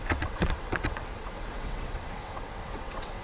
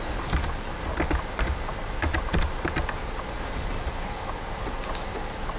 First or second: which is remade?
first